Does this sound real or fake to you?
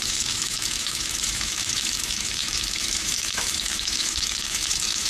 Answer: fake